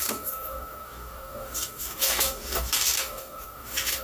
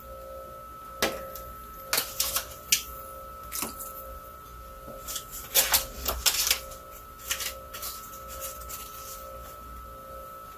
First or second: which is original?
second